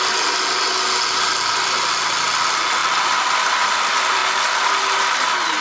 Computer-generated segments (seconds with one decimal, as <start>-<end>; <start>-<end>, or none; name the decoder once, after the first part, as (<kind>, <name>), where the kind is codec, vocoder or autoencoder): 2.8-3.8 (vocoder, BigVGAN v2)